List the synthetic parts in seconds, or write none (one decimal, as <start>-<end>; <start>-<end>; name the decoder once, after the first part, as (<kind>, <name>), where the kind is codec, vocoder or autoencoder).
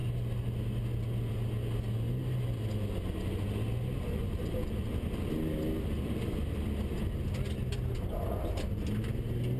none